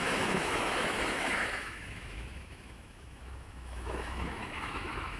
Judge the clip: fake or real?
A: fake